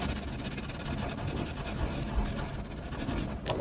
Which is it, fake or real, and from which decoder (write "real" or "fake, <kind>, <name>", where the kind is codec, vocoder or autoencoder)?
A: real